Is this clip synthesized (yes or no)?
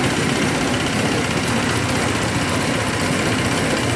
no